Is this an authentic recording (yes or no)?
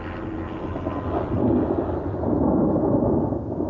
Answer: yes